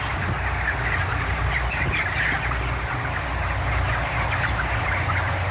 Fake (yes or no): no